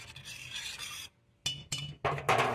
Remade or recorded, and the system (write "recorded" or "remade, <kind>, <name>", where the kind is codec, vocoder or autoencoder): recorded